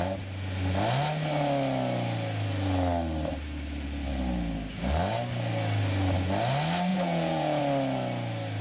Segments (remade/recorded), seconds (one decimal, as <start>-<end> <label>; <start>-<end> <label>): 0.0-6.9 recorded; 6.9-7.6 remade; 7.6-8.6 recorded